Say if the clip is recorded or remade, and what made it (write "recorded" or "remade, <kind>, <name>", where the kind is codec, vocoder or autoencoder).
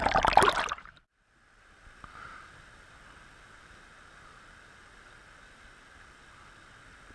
recorded